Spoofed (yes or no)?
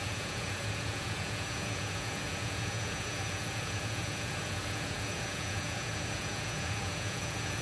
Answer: yes